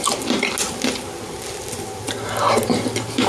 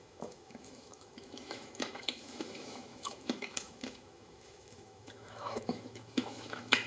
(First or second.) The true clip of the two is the first